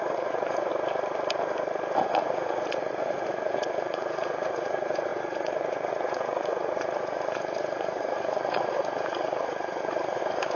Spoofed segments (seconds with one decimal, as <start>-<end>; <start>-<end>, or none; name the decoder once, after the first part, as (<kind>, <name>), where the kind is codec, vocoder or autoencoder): 0.0-0.7 (vocoder, Vocos); 2.0-10.6